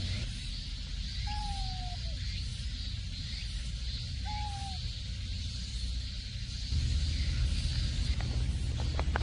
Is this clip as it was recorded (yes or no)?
yes